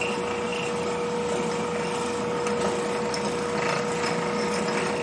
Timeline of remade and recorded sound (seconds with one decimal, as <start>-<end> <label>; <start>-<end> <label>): 0.0-5.0 recorded